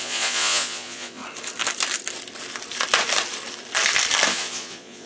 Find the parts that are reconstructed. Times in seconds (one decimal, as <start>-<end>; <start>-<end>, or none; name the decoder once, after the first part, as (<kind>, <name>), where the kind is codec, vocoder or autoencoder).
0.0-1.2 (vocoder, Vocos); 4.3-5.1